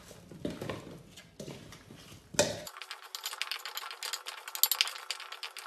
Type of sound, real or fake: real